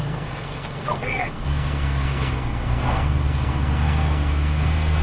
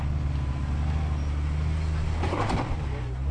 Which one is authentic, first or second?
second